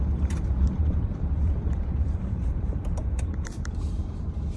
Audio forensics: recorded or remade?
remade